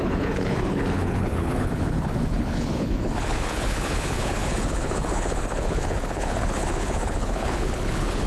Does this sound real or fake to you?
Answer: fake